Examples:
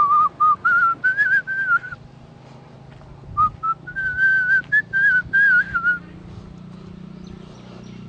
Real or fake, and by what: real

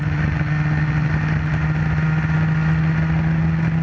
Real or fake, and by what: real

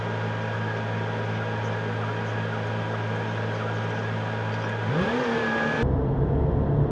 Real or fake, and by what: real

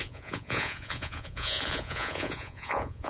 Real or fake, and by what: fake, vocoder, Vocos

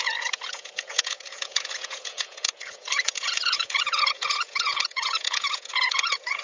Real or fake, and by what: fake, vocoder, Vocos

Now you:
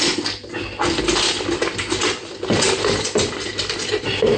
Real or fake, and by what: real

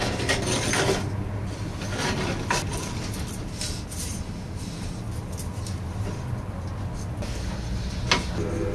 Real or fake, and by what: real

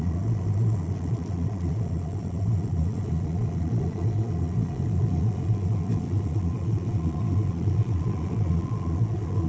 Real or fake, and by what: fake, vocoder, Vocos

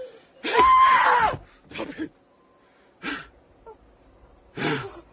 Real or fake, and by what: real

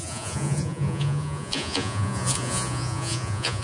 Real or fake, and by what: fake, vocoder, Vocos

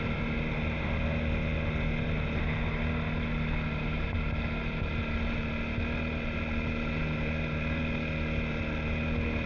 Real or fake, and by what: real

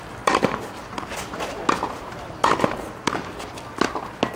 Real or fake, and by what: real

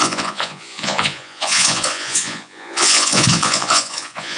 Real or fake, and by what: fake, vocoder, Vocos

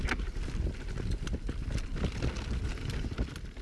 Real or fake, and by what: real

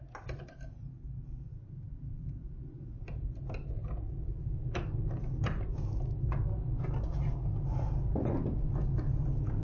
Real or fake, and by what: real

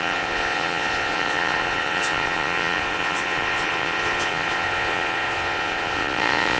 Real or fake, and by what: fake, vocoder, Vocos